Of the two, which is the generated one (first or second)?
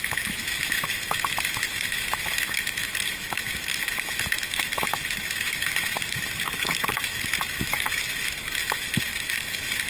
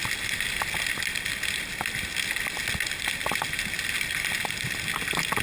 first